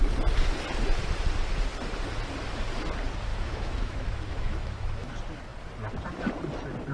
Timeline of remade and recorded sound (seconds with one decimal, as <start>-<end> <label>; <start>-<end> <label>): 0.0-3.3 recorded; 3.3-5.1 remade; 5.1-6.9 recorded

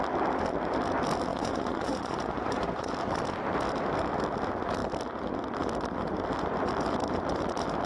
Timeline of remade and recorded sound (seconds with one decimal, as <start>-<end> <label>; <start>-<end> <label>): 0.0-1.3 recorded; 1.3-2.9 remade; 2.9-7.9 recorded

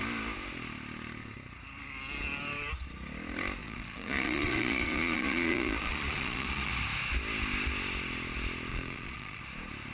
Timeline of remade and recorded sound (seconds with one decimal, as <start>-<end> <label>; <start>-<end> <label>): 0.0-3.6 recorded; 3.6-6.7 remade; 6.7-8.7 recorded; 8.7-9.4 remade; 9.4-9.9 recorded